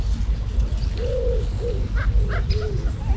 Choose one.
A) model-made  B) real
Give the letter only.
B